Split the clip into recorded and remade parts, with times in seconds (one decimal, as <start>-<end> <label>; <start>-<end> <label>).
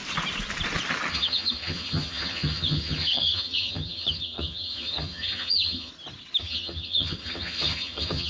0.0-1.1 recorded; 1.1-5.9 remade; 5.9-6.4 recorded; 6.4-8.3 remade